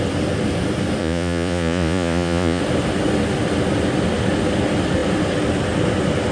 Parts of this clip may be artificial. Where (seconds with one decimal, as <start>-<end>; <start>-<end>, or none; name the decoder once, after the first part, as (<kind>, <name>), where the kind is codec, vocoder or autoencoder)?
1.0-2.6 (vocoder, Vocos)